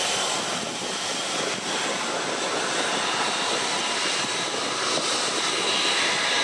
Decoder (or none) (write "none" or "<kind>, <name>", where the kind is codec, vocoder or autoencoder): none